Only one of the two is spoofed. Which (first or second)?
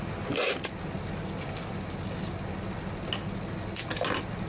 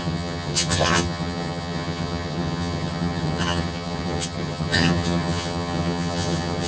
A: second